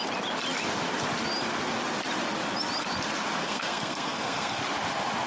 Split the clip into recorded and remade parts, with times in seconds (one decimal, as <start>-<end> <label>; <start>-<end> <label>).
0.0-3.4 recorded; 3.4-4.6 remade; 4.6-5.3 recorded